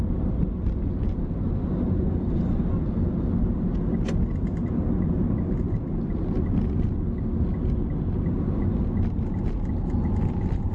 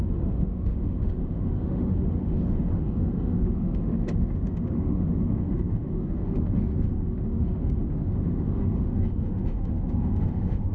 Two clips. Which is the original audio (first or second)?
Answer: first